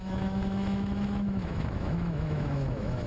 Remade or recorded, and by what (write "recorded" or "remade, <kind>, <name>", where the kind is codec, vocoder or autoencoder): remade, autoencoder, DAC-VAE